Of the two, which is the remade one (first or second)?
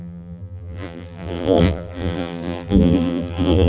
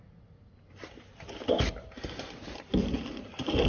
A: first